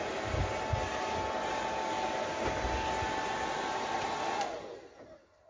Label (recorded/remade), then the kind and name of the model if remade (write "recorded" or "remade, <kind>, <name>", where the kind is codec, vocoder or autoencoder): recorded